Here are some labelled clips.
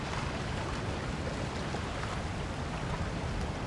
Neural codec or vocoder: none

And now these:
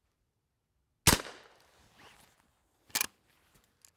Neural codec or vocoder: none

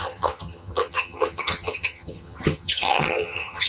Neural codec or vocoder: vocoder, HiFi-GAN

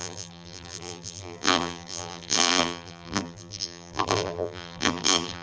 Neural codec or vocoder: vocoder, BigVGAN v2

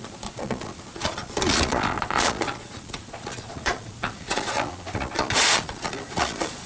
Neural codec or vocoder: vocoder, Vocos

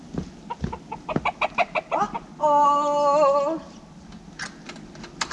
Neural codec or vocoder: none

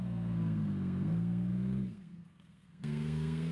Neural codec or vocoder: codec, SNAC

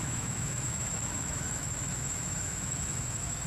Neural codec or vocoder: autoencoder, DAC-VAE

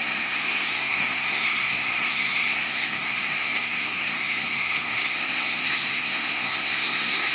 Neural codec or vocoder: codec, SNAC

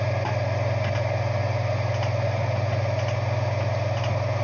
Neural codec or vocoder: none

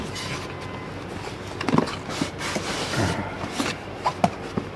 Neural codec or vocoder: none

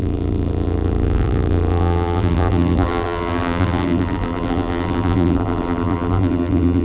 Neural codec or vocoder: vocoder, BigVGAN v2